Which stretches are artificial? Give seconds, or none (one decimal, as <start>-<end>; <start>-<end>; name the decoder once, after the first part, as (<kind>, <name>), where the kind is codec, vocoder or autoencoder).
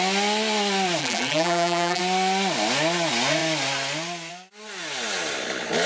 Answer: 1.0-2.0 (vocoder, BigVGAN v2)